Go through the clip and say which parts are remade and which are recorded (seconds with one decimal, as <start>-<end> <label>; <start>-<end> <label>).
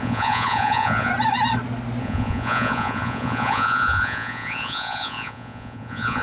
0.0-1.1 remade; 1.1-2.0 recorded; 2.0-6.2 remade